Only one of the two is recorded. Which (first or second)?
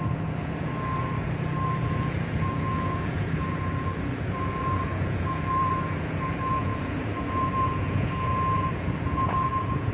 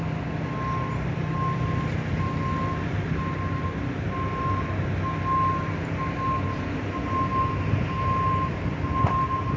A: second